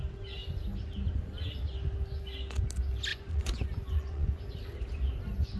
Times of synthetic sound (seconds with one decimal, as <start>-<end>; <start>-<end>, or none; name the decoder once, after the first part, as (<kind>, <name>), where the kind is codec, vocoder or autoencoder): 3.1-4.5 (vocoder, Vocos)